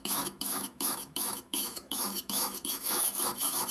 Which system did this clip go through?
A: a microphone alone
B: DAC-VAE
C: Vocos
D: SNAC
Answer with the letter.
B